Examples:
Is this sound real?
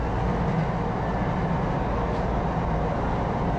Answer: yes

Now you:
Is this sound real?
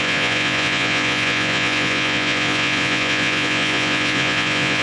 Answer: no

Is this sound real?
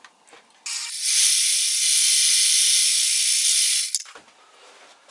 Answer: yes